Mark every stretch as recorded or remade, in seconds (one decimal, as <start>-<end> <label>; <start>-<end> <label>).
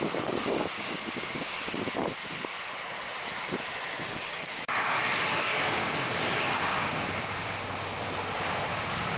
0.0-0.4 recorded; 0.4-1.6 remade; 1.6-4.1 recorded; 4.1-6.9 remade; 6.9-9.2 recorded